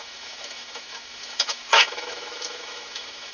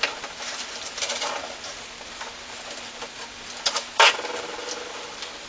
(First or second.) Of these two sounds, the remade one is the first